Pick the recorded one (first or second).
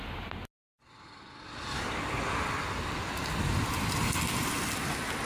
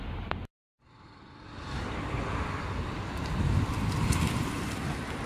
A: first